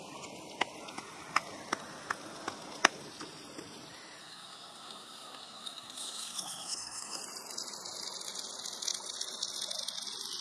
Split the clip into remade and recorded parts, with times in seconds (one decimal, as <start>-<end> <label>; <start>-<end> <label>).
0.0-4.2 recorded; 4.2-7.2 remade; 7.2-10.4 recorded